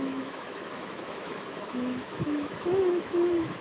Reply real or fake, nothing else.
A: fake